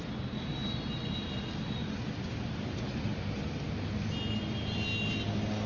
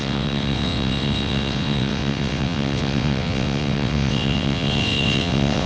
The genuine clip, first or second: first